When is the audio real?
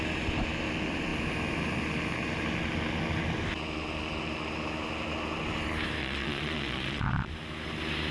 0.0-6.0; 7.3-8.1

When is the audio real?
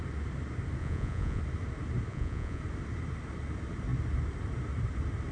0.0-0.8; 1.4-2.1; 2.6-5.3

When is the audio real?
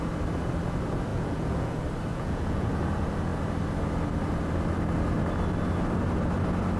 0.0-1.1; 1.7-2.1; 2.7-6.8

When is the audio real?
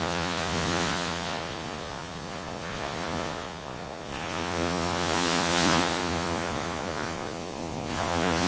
none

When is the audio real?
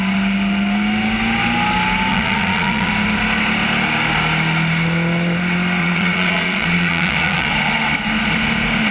0.0-2.1; 2.9-5.8; 7.5-8.9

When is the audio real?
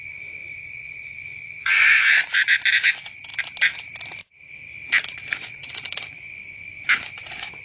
3.3-5.3